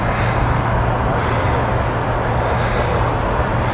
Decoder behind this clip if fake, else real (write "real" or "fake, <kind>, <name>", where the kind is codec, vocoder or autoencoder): real